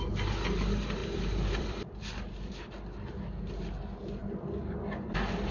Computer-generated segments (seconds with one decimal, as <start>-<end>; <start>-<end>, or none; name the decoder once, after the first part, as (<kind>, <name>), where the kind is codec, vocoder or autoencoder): 1.0-2.6 (vocoder, BigVGAN v2)